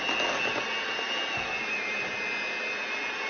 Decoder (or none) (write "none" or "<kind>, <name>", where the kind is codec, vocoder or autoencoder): none